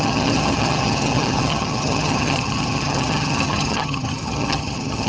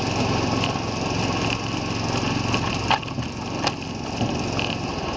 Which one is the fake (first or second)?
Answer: first